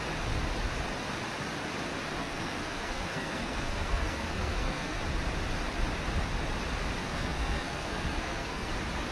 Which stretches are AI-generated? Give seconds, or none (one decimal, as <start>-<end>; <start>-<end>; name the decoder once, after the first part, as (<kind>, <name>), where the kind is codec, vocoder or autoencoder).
2.2-5.0 (codec, SNAC); 7.0-8.7